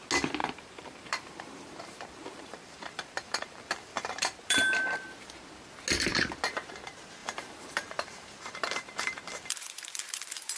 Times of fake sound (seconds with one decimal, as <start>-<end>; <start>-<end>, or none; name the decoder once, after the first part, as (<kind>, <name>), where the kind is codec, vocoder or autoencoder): 0.4-5.2 (vocoder, BigVGAN v2); 7.2-10.6